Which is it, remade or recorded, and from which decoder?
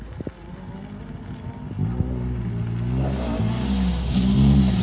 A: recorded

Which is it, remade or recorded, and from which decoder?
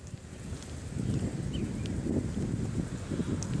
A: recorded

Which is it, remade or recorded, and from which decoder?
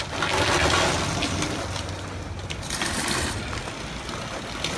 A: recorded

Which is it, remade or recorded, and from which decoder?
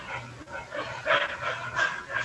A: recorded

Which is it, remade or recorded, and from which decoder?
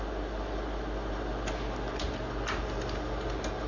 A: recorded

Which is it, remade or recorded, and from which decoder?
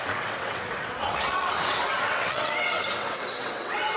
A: remade, vocoder, WaveNeXt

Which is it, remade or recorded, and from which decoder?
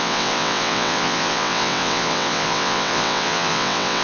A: remade, vocoder, WaveNeXt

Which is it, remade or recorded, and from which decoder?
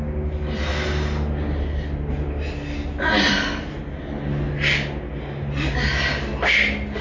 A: recorded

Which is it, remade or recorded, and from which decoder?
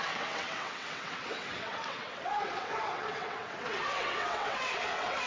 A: remade, vocoder, WaveNeXt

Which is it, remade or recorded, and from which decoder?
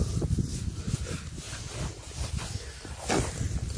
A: recorded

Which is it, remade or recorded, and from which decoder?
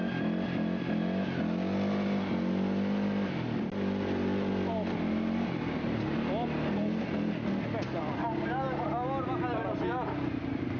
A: recorded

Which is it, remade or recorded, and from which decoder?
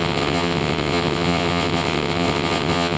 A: remade, vocoder, WaveNeXt